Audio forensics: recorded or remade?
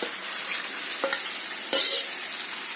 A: recorded